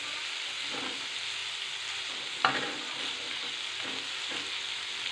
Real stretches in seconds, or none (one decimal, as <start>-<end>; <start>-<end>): 0.0-5.1